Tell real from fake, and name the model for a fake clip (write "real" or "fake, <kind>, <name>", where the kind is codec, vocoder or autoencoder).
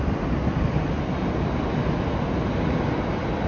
real